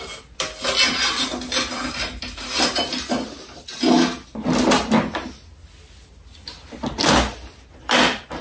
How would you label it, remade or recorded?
recorded